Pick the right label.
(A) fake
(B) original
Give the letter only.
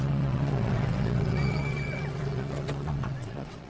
A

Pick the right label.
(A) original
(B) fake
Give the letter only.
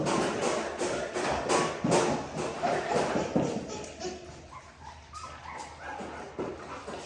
A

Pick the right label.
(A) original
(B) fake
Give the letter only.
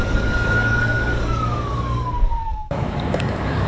B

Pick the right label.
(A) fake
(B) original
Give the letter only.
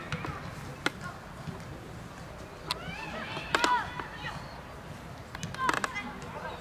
B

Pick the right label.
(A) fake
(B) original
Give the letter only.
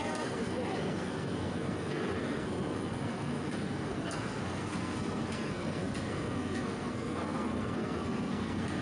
A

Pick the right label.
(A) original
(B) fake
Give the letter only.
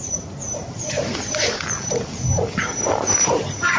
A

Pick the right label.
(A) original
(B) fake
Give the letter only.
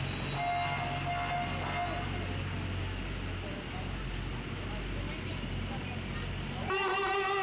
A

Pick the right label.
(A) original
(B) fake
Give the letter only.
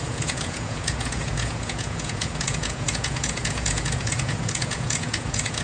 B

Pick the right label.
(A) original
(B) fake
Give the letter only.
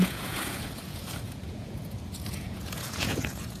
B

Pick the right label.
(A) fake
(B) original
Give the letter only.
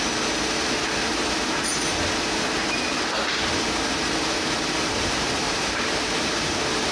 B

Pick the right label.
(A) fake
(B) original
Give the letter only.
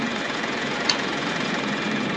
A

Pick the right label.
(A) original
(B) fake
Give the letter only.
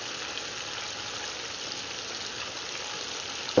A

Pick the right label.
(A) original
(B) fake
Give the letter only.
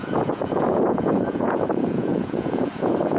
B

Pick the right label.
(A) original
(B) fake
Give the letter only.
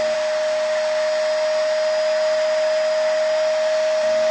A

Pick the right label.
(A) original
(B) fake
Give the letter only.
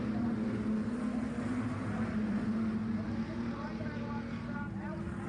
A